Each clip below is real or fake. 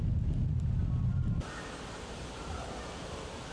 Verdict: real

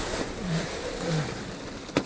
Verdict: real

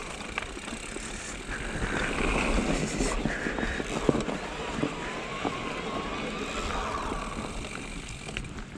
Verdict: real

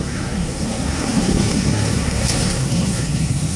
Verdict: fake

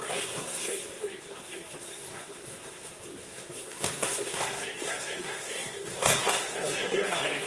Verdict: fake